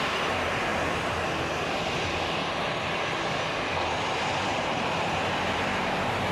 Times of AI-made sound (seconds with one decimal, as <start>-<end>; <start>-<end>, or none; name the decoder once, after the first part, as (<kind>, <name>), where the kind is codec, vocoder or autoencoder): 0.0-0.7 (vocoder, BigVGAN v2); 4.5-6.3